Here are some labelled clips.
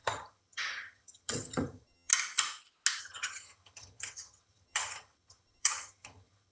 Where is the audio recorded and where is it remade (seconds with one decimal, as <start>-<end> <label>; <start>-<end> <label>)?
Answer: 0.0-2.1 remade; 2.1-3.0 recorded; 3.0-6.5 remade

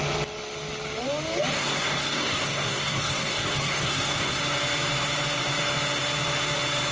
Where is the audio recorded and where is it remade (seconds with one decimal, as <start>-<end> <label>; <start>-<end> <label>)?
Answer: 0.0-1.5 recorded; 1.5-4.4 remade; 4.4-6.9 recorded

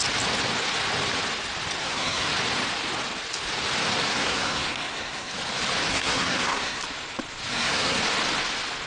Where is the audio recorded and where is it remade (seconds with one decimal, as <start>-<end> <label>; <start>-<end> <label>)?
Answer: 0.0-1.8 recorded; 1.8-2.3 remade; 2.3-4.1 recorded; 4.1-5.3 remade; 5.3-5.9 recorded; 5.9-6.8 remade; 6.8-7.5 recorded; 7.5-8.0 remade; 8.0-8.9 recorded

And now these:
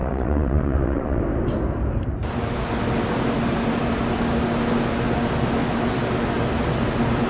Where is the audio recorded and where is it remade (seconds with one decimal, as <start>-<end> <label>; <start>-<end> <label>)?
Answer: 0.0-1.2 remade; 1.2-7.3 recorded

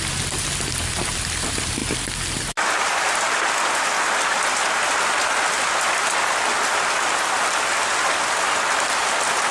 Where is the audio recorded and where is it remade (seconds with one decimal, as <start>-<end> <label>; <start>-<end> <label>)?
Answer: 0.0-9.5 recorded

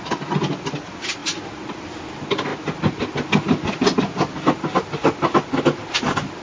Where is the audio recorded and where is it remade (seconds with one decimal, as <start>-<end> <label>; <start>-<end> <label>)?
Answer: 0.0-6.4 recorded